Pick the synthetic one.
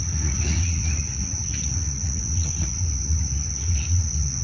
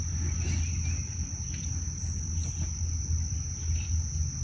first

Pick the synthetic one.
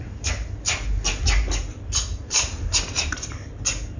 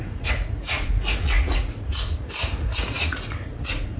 second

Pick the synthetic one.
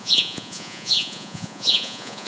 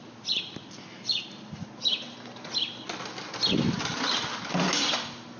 first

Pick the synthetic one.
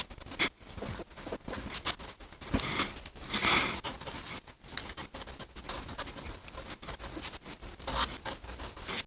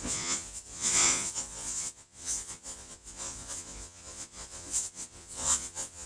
second